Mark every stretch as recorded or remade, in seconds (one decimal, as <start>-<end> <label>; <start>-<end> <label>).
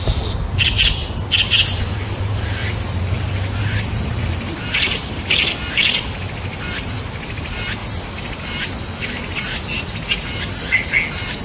0.0-1.0 recorded; 1.0-5.7 remade; 5.7-7.8 recorded; 7.8-8.4 remade; 8.4-11.4 recorded